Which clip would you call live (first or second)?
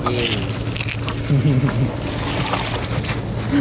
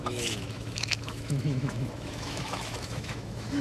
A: first